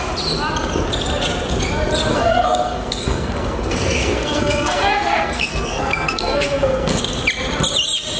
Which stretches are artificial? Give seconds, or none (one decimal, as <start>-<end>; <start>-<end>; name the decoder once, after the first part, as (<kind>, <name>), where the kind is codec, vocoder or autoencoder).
2.1-7.0 (codec, SNAC)